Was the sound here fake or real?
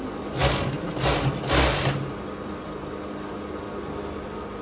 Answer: real